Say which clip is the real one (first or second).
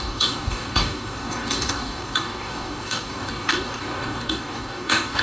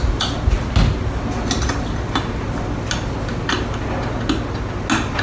second